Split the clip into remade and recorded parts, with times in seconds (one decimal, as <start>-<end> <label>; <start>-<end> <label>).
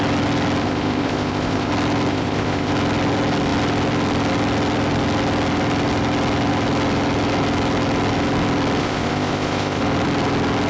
0.0-0.6 recorded; 0.6-1.7 remade; 1.7-2.1 recorded; 2.1-2.7 remade; 2.7-8.8 recorded; 8.8-9.8 remade; 9.8-10.7 recorded